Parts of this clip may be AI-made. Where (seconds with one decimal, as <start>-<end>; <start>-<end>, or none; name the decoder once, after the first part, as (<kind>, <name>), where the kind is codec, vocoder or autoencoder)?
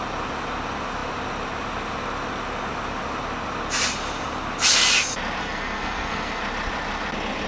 5.4-6.4 (codec, SNAC)